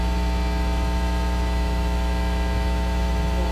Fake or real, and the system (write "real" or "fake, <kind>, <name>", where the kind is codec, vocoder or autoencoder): fake, autoencoder, DAC-VAE